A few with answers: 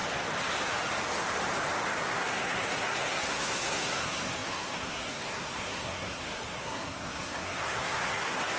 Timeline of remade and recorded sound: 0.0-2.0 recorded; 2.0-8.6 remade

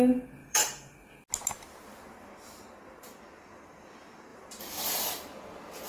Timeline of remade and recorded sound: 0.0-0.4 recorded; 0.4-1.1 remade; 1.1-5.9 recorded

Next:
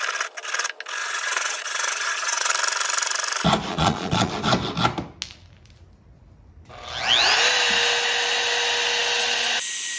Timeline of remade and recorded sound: 0.0-1.0 recorded; 1.0-2.5 remade; 2.5-3.7 recorded; 3.7-4.3 remade; 4.3-10.0 recorded

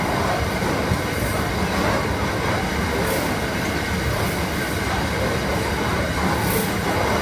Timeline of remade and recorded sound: 0.0-7.2 recorded